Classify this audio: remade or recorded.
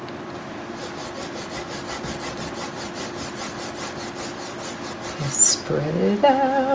recorded